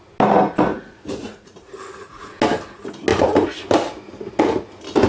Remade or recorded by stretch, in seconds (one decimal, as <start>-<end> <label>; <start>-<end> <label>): 0.0-0.7 recorded; 0.7-2.3 remade; 2.3-5.1 recorded